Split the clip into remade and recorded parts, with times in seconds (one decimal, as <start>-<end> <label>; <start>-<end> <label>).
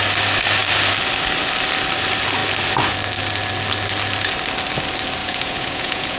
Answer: 0.0-5.2 recorded; 5.2-6.2 remade